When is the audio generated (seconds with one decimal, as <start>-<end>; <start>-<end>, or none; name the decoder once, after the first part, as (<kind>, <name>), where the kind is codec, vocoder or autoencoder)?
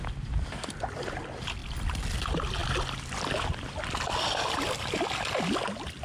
none